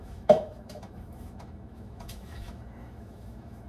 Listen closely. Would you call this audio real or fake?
fake